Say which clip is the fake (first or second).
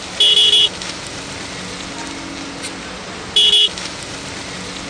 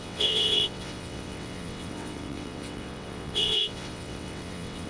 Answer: second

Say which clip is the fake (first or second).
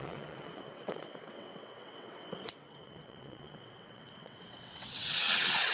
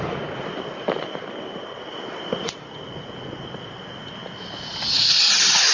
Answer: first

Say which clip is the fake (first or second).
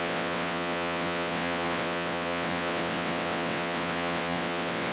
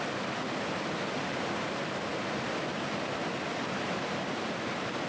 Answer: first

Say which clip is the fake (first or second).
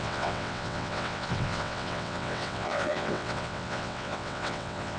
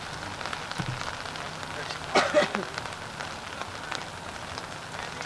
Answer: first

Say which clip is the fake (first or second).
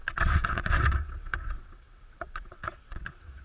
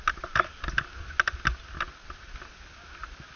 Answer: first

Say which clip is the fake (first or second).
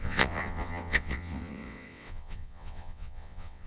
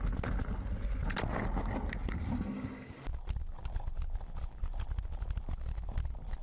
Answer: first